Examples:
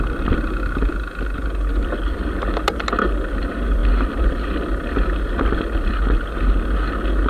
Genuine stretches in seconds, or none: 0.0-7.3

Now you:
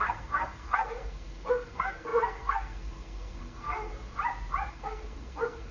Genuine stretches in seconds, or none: 3.9-4.7

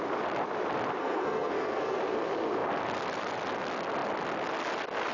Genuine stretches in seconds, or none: 0.0-1.0; 2.0-5.1

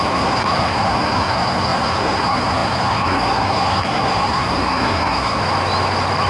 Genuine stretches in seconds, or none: 5.4-6.3

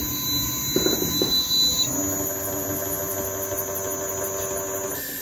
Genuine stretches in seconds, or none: 0.0-5.2

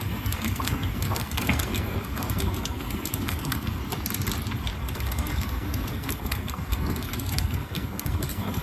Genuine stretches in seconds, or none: 3.8-4.8

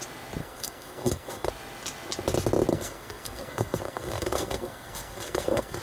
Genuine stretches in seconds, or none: 0.0-0.4; 1.5-2.7

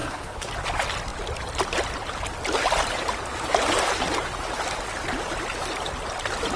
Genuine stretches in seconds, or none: 0.5-6.6